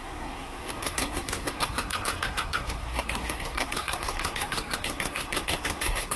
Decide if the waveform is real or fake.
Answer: fake